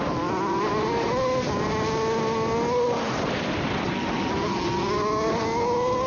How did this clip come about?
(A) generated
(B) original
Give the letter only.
B